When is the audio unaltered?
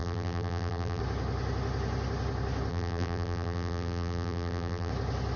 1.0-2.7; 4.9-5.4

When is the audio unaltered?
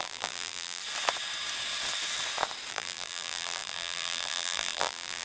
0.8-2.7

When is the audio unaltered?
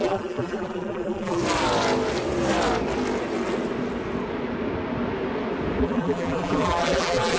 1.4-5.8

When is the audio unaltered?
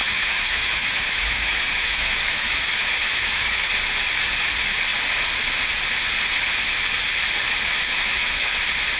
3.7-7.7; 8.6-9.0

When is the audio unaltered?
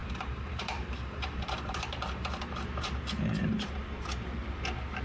3.0-3.4; 4.3-5.0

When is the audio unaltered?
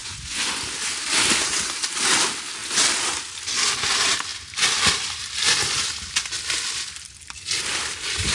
0.6-8.3